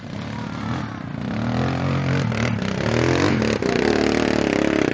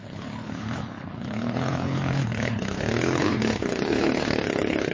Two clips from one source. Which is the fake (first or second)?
second